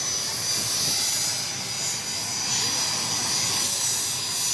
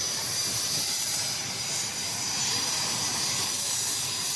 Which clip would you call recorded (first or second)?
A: first